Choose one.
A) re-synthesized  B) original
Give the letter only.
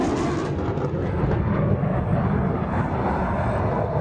B